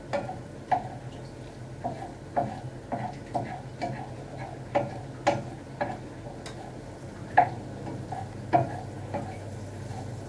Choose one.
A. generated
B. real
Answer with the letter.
B